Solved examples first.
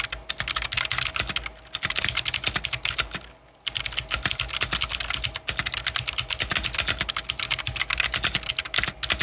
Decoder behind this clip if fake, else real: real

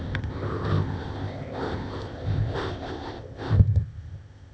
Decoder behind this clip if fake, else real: fake, codec, ZipCodec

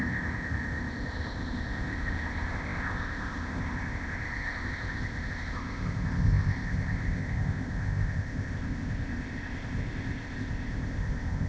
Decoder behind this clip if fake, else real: fake, codec, ZipCodec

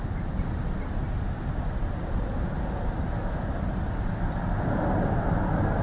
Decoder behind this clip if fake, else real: real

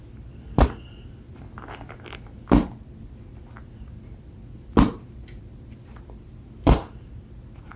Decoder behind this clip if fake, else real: real